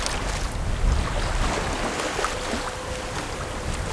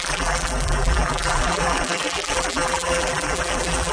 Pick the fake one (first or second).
second